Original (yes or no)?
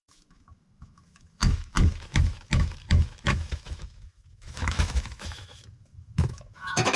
no